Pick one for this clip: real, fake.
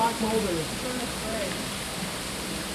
real